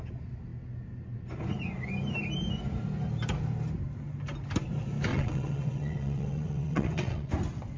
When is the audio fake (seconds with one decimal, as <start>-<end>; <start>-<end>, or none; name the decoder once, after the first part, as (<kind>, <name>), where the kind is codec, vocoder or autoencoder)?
5.1-7.3 (vocoder, WaveNeXt)